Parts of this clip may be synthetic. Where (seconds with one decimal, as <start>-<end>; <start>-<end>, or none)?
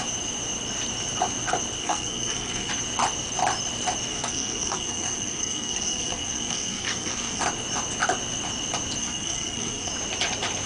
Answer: 1.8-2.7; 4.1-7.4; 9.0-9.9